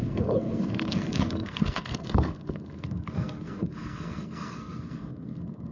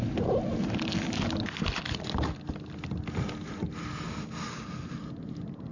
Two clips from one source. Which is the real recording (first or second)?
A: second